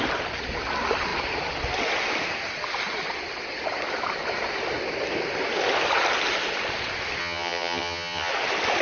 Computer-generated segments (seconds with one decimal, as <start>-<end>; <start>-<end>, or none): 7.2-8.3